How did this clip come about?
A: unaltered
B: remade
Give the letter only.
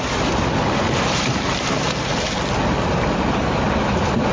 A